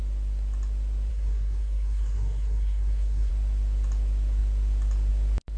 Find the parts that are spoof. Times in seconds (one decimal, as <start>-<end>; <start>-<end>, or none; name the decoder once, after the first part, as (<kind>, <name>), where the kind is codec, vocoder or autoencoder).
1.1-3.3 (codec, SNAC)